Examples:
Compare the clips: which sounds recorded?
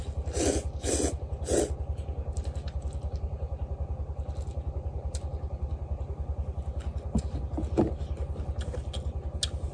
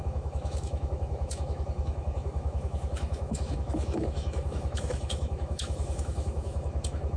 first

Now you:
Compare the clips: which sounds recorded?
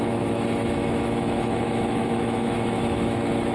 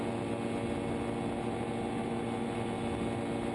second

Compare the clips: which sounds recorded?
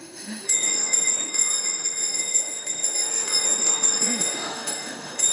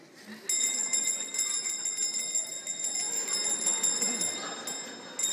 second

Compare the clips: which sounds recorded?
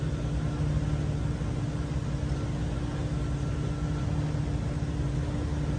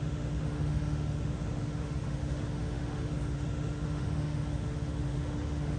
first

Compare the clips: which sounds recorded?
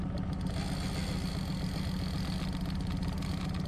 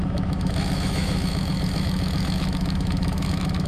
first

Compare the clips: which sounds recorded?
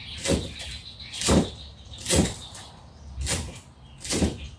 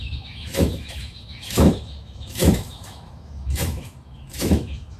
first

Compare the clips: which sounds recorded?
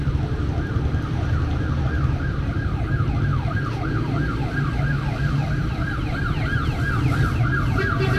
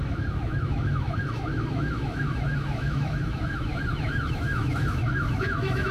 first